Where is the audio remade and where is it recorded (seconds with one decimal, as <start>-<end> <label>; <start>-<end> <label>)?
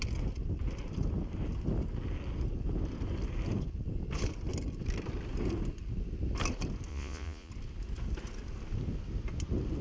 0.0-6.9 recorded; 6.9-7.5 remade; 7.5-9.8 recorded